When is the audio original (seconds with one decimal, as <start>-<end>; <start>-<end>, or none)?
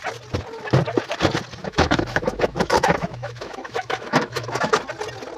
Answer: 0.0-1.6; 4.7-5.4